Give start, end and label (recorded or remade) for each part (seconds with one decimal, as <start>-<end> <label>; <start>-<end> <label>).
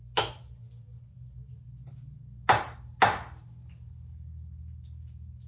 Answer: 0.0-5.5 recorded